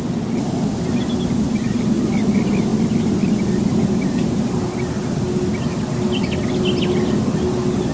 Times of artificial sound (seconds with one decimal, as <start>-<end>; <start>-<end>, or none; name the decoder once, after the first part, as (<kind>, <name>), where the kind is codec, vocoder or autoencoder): none